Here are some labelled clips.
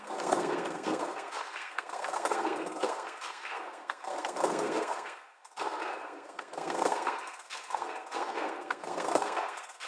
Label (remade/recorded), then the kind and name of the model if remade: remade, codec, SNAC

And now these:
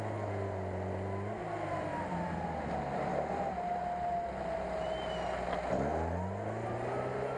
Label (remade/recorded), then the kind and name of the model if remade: recorded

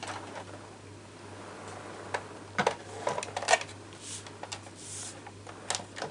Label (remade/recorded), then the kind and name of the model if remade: recorded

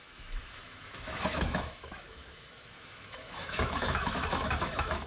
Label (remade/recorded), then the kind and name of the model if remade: remade, autoencoder, DAC-VAE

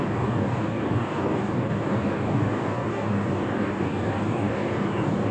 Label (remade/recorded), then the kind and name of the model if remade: remade, codec, DAC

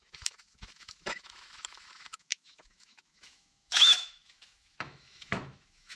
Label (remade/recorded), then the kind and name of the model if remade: remade, autoencoder, DAC-VAE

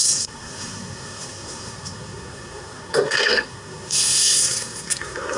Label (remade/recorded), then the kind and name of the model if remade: remade, codec, SNAC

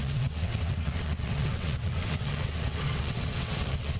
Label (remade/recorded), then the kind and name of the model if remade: remade, vocoder, WaveNeXt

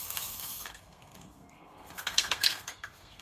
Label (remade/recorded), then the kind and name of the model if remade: remade, codec, SNAC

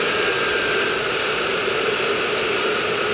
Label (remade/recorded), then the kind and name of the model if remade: recorded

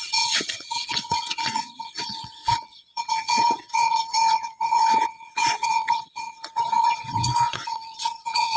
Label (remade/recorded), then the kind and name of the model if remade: remade, vocoder, WaveNeXt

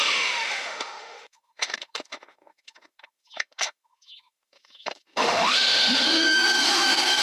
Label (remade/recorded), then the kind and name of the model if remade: remade, autoencoder, DAC-VAE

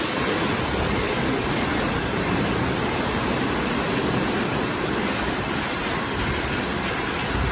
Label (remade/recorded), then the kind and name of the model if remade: remade, vocoder, BigVGAN v2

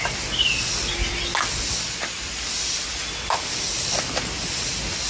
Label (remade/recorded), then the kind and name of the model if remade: recorded